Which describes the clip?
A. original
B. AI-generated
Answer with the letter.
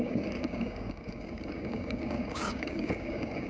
B